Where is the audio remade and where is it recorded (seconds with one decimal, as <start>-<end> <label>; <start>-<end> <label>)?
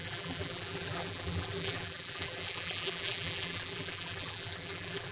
0.0-5.1 remade